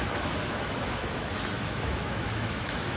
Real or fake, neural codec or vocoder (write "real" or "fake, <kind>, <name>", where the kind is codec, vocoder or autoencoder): fake, autoencoder, DAC-VAE